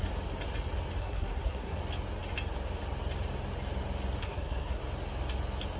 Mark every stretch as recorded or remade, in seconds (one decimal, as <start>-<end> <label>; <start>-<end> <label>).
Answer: 0.0-1.0 recorded; 1.0-1.8 remade; 1.8-4.2 recorded; 4.2-4.8 remade; 4.8-5.8 recorded